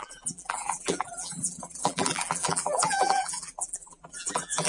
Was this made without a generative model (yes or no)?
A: no